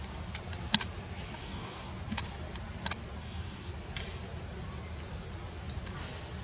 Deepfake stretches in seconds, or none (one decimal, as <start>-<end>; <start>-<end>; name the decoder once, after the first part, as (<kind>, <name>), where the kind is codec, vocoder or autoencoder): 1.4-1.9 (codec, DAC); 3.2-3.7